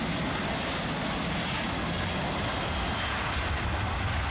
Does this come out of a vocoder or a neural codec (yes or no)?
no